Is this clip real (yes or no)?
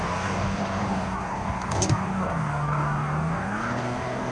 no